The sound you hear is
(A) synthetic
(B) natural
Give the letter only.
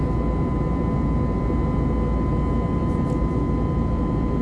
B